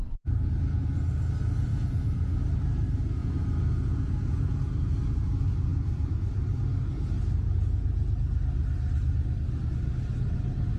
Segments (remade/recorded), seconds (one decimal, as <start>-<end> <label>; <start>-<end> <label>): 0.0-1.2 remade; 1.2-1.7 recorded; 1.7-2.4 remade; 2.4-3.2 recorded; 3.2-4.6 remade; 4.6-10.8 recorded